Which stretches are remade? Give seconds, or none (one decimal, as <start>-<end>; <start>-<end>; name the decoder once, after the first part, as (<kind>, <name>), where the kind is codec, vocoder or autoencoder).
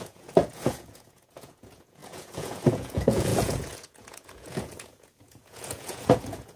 0.0-6.6 (vocoder, Vocos)